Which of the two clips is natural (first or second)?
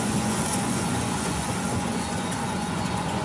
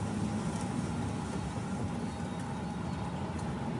second